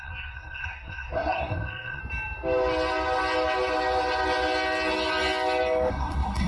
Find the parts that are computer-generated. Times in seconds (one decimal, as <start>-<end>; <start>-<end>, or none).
0.0-2.0; 5.9-6.5